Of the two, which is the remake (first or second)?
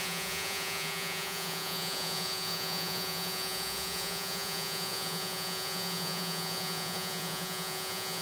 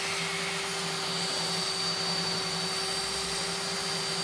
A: first